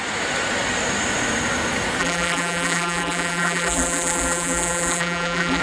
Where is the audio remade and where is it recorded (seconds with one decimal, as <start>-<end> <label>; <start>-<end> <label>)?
0.0-2.0 recorded; 2.0-5.6 remade